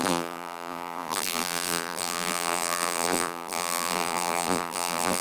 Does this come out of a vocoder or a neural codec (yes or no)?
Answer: yes